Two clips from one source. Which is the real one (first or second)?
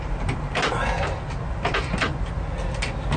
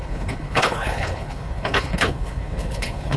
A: first